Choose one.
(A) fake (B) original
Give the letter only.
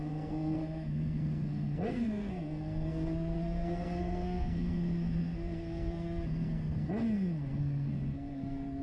A